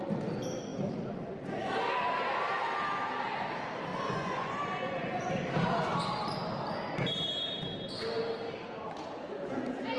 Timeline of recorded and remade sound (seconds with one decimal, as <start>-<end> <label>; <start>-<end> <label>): 0.0-3.9 recorded; 3.9-5.3 remade; 5.3-10.0 recorded